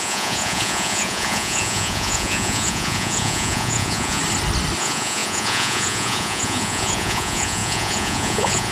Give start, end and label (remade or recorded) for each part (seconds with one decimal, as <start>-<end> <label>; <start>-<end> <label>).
0.0-4.2 remade; 4.2-4.8 recorded; 4.8-8.7 remade

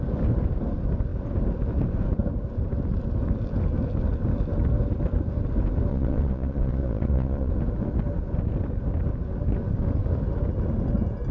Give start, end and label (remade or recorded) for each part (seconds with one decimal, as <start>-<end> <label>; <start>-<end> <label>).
0.0-5.9 recorded; 5.9-7.5 remade; 7.5-11.3 recorded

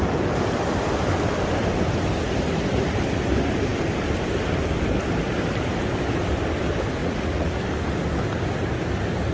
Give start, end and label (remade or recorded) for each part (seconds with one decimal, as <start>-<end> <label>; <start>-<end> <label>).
0.0-7.0 recorded; 7.0-7.6 remade; 7.6-9.3 recorded